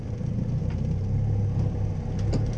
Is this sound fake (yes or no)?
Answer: no